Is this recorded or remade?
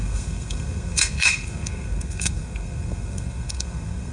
remade